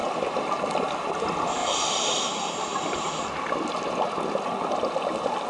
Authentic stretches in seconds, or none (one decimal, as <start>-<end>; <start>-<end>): 0.0-1.6; 2.1-5.5